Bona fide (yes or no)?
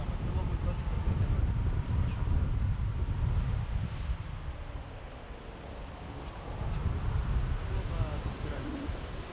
yes